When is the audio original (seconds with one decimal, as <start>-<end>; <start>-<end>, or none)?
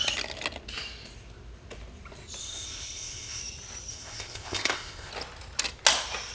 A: 0.0-2.4; 3.4-3.9; 5.1-6.3